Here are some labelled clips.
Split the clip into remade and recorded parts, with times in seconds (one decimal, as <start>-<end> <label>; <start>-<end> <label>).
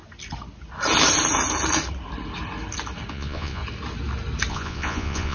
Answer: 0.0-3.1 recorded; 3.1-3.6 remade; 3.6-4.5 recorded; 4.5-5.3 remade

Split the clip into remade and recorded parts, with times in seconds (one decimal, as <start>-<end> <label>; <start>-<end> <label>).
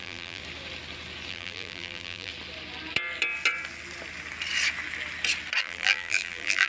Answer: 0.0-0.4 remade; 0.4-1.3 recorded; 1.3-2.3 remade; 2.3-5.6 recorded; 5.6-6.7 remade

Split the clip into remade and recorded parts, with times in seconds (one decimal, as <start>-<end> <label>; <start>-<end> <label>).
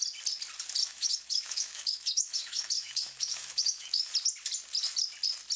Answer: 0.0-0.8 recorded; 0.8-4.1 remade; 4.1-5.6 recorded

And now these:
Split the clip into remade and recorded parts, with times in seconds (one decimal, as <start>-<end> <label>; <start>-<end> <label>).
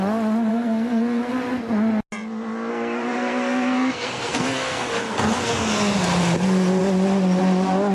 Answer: 0.0-0.5 recorded; 0.5-1.3 remade; 1.3-2.7 recorded; 2.7-5.5 remade; 5.5-7.9 recorded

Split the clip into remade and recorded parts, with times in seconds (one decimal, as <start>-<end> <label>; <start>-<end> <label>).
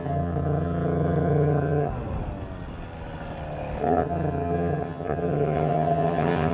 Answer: 0.0-1.9 remade; 1.9-3.8 recorded; 3.8-6.5 remade